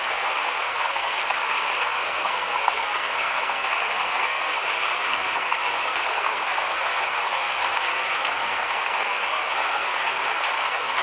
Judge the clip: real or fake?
fake